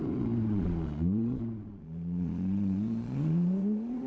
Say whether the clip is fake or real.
fake